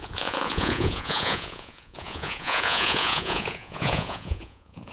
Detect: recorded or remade remade